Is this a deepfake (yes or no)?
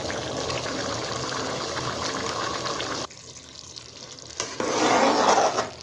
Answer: no